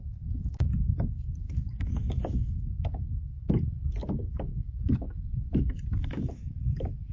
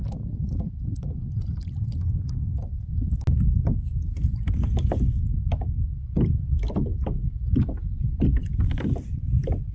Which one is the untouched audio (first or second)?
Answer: second